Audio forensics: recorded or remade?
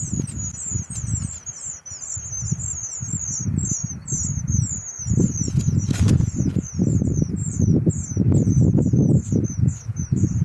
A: recorded